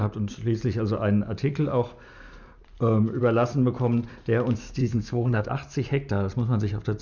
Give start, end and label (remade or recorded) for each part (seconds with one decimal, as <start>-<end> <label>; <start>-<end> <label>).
0.0-4.8 recorded; 4.8-5.5 remade; 5.5-7.0 recorded